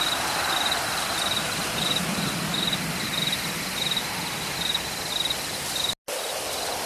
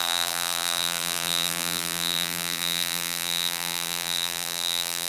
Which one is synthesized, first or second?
second